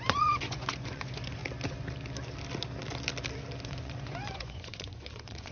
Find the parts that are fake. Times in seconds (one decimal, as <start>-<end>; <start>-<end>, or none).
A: 0.0-1.4; 3.6-5.5